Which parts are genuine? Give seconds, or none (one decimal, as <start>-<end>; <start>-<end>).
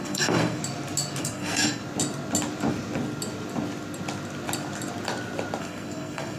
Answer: 0.6-1.2; 1.8-5.6